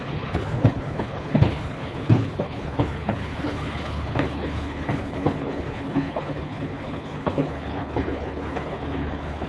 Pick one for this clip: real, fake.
fake